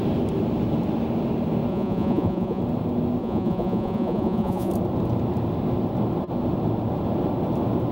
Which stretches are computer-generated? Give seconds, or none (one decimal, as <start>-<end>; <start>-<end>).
1.7-2.6; 3.2-4.7